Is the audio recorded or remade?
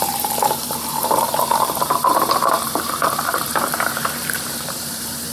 remade